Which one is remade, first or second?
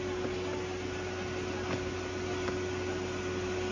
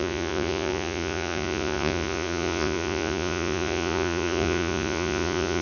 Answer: second